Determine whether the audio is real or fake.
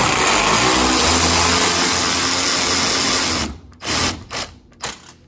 real